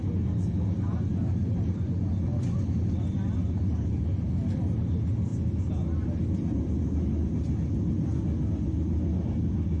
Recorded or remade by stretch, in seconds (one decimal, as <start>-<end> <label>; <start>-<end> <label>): 0.0-9.8 recorded